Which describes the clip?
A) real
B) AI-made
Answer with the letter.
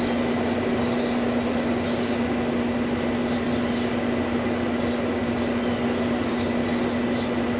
A